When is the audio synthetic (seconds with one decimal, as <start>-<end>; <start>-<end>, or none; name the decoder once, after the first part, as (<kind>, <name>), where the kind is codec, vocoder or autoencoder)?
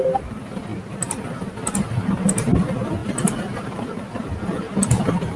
none